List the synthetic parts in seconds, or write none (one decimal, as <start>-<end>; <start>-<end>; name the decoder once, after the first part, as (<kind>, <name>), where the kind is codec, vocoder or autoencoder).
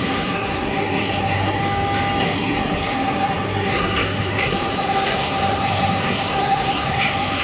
0.0-1.6 (codec, SNAC); 2.2-7.4